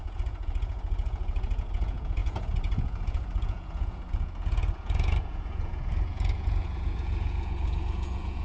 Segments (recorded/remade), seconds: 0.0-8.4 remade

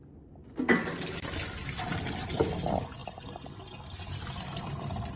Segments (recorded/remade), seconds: 0.0-5.2 recorded

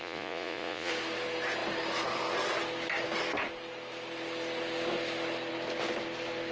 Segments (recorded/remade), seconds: 0.0-0.9 remade; 0.9-6.5 recorded

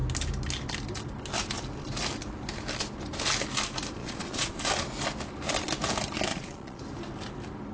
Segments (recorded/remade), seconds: 0.0-4.0 recorded; 4.0-4.6 remade; 4.6-6.3 recorded; 6.3-6.8 remade; 6.8-7.7 recorded

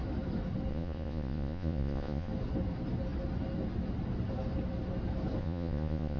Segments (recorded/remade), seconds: 0.0-0.7 recorded; 0.7-2.3 remade; 2.3-5.4 recorded; 5.4-6.2 remade

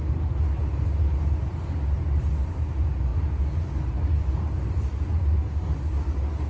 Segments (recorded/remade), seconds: 0.0-6.5 recorded

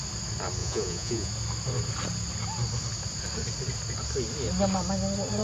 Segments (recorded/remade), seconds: 0.0-0.6 recorded; 0.6-1.3 remade; 1.3-5.4 recorded